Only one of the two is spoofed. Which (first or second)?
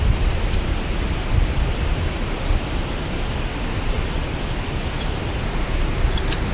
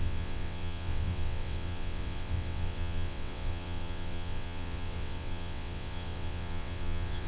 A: second